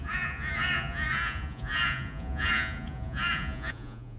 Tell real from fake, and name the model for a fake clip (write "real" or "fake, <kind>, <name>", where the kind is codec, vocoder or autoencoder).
fake, vocoder, Vocos